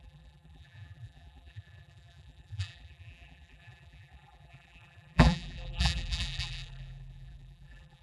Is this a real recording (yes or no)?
no